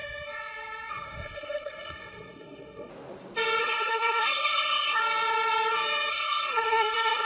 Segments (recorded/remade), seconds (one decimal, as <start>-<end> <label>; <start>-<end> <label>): 0.0-0.9 recorded; 0.9-2.9 remade; 2.9-3.6 recorded; 3.6-5.0 remade; 5.0-6.1 recorded; 6.1-7.3 remade